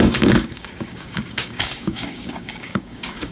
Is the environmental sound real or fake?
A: fake